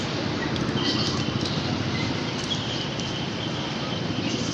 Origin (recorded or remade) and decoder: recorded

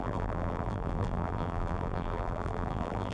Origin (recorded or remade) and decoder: remade, vocoder, BigVGAN v2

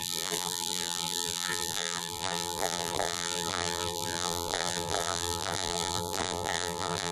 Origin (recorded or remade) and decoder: remade, vocoder, BigVGAN v2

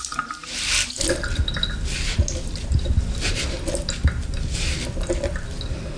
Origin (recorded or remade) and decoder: recorded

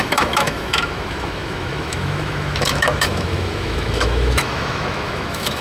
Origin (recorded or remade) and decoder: remade, autoencoder, DAC-VAE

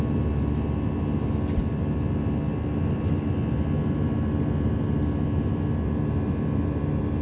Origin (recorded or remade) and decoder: recorded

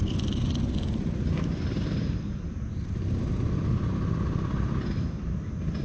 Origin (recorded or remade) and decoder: recorded